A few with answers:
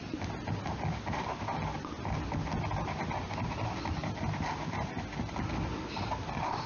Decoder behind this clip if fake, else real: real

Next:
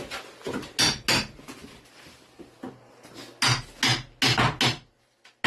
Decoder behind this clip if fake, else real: real